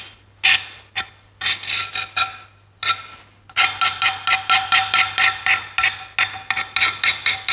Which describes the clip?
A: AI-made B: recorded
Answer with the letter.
B